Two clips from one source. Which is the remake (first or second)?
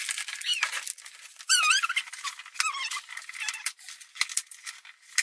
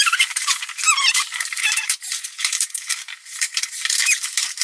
second